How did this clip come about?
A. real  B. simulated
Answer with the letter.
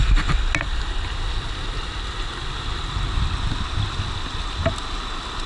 A